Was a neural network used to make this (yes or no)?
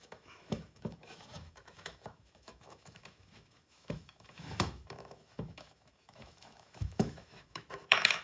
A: yes